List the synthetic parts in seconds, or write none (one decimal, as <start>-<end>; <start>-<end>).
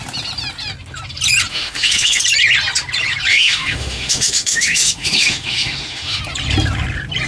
1.5-2.2; 3.3-6.2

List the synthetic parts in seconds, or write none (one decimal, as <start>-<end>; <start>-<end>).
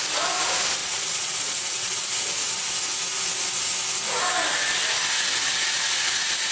0.8-2.1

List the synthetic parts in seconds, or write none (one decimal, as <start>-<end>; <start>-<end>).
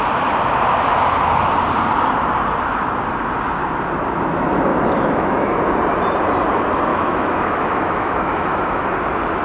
4.7-5.5; 6.9-8.9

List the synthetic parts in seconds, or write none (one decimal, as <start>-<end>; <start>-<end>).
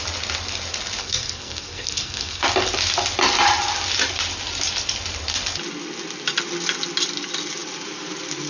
1.0-2.4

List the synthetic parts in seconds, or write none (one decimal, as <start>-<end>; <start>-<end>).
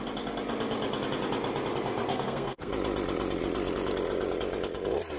2.1-2.7